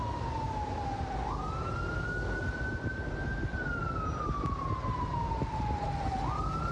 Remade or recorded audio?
recorded